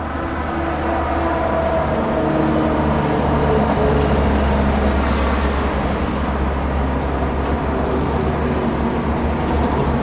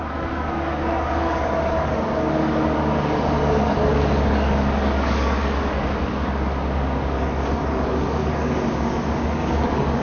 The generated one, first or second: second